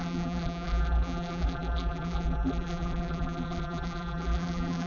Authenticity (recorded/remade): remade